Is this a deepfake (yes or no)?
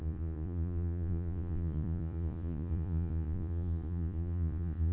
yes